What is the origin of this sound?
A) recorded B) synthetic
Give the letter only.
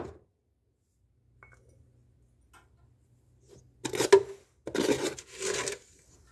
A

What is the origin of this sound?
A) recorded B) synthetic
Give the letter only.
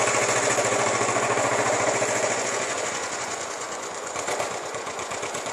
B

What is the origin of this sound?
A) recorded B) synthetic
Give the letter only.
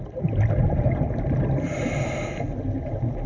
A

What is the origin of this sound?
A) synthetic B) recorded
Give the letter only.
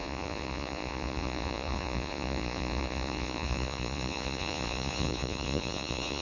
A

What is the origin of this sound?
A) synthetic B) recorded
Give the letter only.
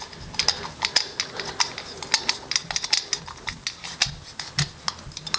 B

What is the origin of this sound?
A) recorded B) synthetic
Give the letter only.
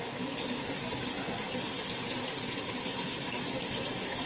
A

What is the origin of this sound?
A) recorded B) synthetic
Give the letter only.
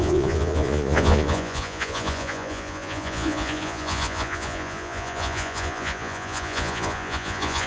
B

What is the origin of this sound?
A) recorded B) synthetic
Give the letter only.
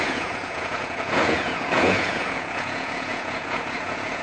B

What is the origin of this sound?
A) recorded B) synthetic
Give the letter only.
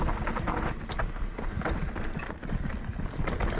A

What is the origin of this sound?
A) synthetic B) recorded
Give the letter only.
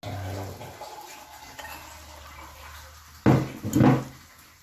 B